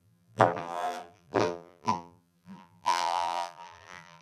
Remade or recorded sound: remade